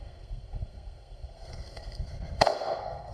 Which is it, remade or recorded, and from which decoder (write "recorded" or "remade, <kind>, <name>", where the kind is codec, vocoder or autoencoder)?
remade, codec, SNAC